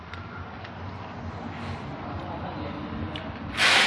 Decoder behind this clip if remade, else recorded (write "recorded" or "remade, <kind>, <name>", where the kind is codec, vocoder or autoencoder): recorded